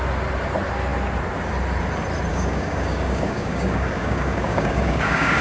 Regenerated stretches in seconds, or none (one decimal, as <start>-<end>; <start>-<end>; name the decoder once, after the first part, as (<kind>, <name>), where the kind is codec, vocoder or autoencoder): 2.3-5.4 (codec, DAC)